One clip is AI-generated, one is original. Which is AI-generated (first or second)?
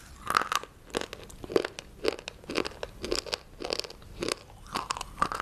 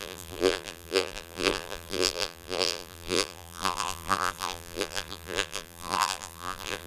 second